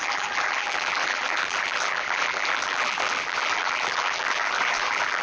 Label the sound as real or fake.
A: fake